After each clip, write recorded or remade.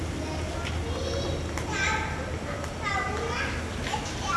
recorded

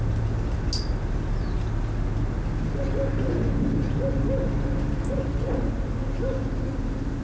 recorded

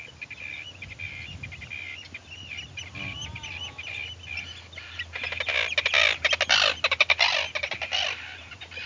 recorded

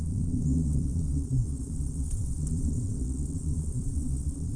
remade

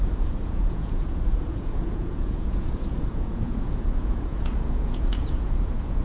remade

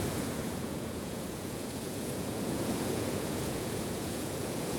remade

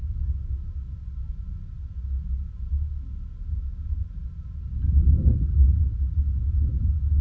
recorded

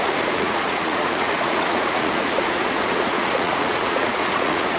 remade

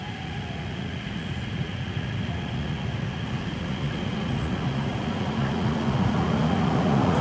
remade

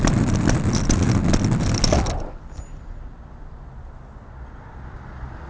recorded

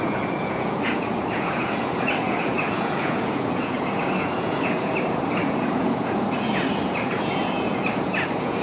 remade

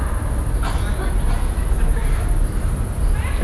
recorded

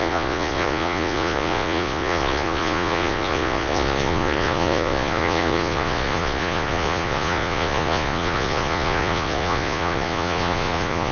remade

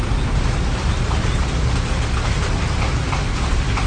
recorded